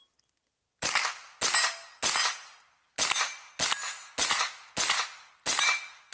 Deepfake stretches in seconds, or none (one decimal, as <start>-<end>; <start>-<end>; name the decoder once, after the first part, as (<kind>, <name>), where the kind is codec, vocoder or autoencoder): none